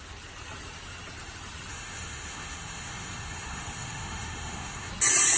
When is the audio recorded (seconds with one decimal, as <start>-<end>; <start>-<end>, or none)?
0.0-1.7; 4.9-5.4